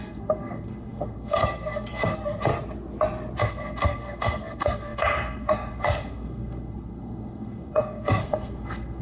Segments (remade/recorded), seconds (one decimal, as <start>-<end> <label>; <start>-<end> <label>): 0.0-2.5 remade; 2.5-3.4 recorded; 3.4-9.0 remade